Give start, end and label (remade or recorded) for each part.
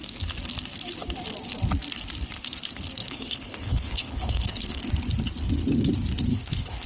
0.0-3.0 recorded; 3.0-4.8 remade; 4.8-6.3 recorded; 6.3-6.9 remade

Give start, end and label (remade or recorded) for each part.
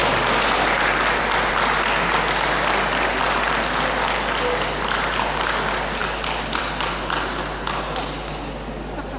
0.0-9.2 recorded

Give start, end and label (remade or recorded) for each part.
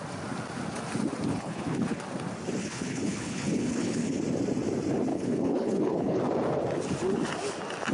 0.0-1.3 recorded; 1.3-2.0 remade; 2.0-2.6 recorded; 2.6-4.2 remade; 4.2-5.1 recorded; 5.1-6.2 remade; 6.2-7.9 recorded